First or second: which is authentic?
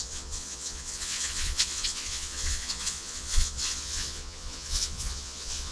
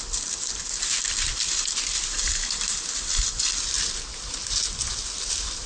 second